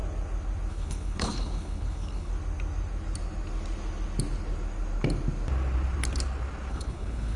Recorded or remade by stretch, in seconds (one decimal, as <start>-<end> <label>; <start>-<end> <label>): 0.0-0.7 recorded; 0.7-2.3 remade; 2.3-6.7 recorded; 6.7-7.4 remade